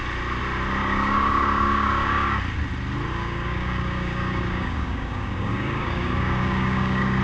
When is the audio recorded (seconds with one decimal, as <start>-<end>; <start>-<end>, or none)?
0.0-0.8; 2.4-3.1